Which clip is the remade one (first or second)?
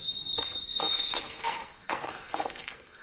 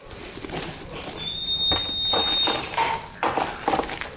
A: first